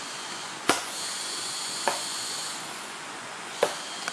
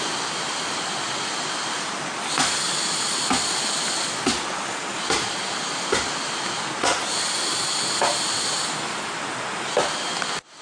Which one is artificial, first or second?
first